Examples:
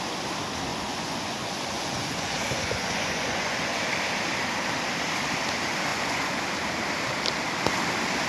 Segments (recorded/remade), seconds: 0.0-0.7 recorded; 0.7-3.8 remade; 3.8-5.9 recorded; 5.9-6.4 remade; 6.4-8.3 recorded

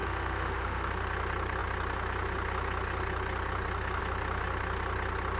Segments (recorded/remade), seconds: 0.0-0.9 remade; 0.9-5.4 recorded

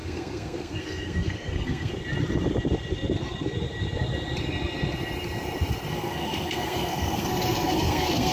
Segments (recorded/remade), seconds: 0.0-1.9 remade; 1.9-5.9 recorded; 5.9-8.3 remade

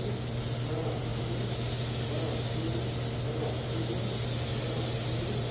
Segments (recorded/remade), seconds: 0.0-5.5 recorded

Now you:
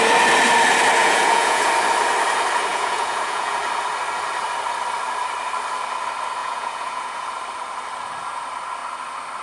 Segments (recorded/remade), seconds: 0.0-1.0 recorded; 1.0-1.7 remade; 1.7-2.7 recorded; 2.7-3.6 remade; 3.6-6.4 recorded; 6.4-7.3 remade; 7.3-9.4 recorded

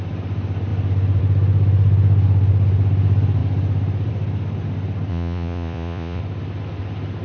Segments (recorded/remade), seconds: 0.0-5.1 recorded; 5.1-6.2 remade; 6.2-7.2 recorded